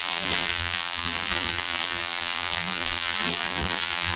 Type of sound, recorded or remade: remade